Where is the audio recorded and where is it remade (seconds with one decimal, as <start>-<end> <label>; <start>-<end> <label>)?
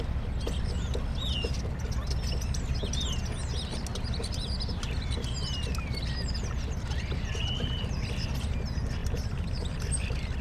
0.0-9.0 recorded; 9.0-9.8 remade; 9.8-10.4 recorded